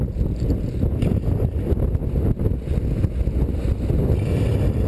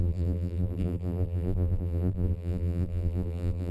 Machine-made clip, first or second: second